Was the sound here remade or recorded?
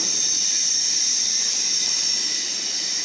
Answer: remade